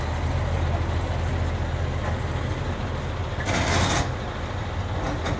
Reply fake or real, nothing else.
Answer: real